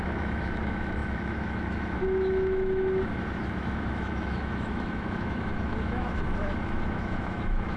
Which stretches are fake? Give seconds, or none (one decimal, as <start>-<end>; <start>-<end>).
0.0-7.8